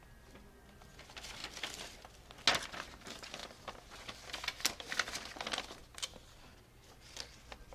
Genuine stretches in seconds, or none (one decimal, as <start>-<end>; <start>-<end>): 0.0-7.7